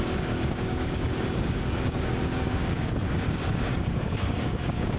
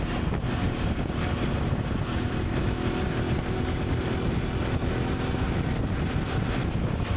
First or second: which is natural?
second